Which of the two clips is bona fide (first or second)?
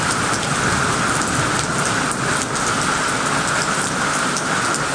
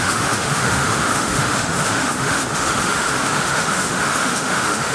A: first